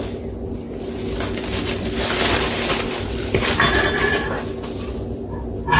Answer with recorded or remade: recorded